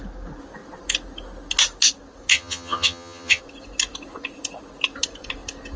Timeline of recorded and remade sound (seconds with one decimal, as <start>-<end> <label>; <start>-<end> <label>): 0.0-2.3 recorded; 2.3-3.4 remade; 3.4-5.8 recorded